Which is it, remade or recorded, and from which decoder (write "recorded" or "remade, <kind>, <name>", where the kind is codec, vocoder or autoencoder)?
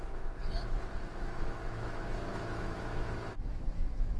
remade, autoencoder, DAC-VAE